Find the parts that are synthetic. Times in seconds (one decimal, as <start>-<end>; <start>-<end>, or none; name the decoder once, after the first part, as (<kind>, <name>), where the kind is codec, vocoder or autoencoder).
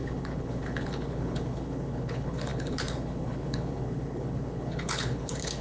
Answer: 0.0-5.6 (codec, HILCodec)